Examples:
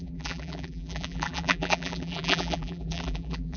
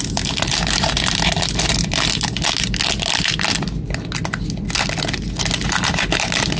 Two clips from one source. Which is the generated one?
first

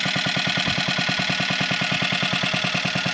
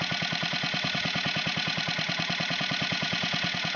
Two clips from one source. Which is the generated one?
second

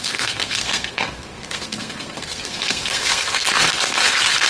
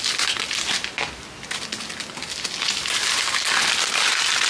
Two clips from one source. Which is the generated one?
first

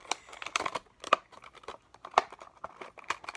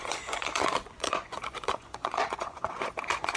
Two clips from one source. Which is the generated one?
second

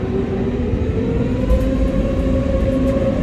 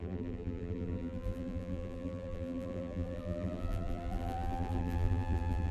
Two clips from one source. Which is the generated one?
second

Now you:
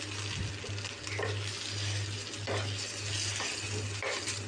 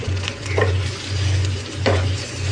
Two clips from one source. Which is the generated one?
second